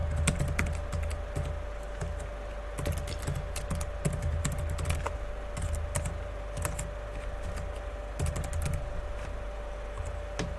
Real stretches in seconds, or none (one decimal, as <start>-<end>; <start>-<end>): 0.0-10.6